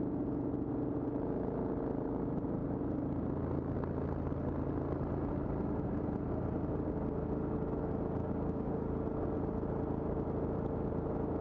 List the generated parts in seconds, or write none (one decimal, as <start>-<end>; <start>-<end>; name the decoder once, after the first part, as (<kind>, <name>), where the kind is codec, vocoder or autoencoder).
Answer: 8.2-8.8 (codec, DAC)

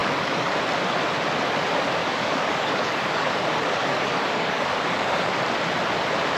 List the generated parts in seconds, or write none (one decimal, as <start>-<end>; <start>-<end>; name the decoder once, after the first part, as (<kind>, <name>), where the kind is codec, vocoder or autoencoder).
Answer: 0.0-0.6 (codec, DAC); 2.0-5.3

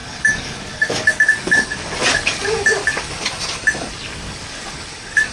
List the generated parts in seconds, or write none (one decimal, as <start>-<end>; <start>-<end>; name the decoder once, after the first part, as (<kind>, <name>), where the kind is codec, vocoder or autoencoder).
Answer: 0.0-3.2 (codec, DAC); 3.9-5.3

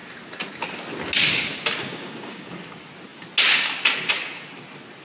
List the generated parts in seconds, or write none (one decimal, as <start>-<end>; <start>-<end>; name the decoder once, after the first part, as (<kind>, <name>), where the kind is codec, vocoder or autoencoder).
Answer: 1.8-2.5 (codec, DAC)

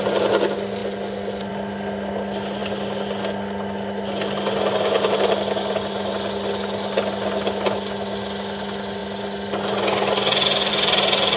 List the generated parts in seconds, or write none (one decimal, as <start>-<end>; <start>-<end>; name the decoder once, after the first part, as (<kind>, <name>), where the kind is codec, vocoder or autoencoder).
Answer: none

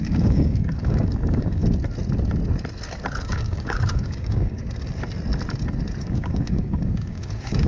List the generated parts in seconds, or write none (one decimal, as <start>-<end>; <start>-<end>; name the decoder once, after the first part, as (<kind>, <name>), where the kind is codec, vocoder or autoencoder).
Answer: 0.0-1.6 (codec, DAC); 3.2-4.6; 6.0-7.7

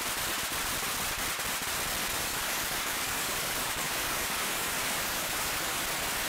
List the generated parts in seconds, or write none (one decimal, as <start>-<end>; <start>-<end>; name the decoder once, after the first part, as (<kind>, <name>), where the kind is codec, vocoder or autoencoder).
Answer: 2.0-5.8 (codec, DAC)